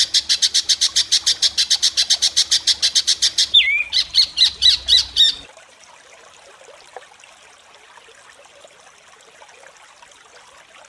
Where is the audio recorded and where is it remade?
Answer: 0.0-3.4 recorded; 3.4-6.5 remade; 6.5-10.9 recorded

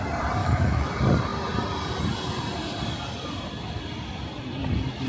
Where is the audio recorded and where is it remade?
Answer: 0.0-0.4 recorded; 0.4-0.9 remade; 0.9-5.1 recorded

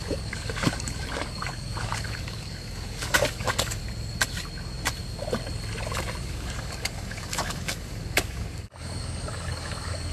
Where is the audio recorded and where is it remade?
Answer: 0.0-3.8 remade; 3.8-6.2 recorded; 6.2-10.1 remade

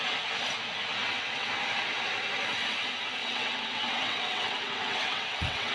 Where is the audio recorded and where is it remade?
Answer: 0.0-1.0 recorded; 1.0-1.5 remade; 1.5-3.2 recorded; 3.2-5.7 remade

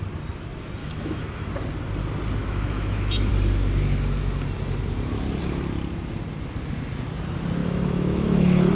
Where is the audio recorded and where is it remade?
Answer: 0.0-0.8 recorded; 0.8-1.5 remade; 1.5-2.4 recorded; 2.4-3.3 remade; 3.3-7.6 recorded; 7.6-8.7 remade